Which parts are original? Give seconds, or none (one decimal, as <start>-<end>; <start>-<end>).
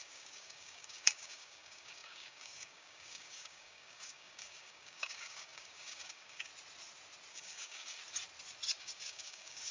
6.5-7.3; 8.0-8.8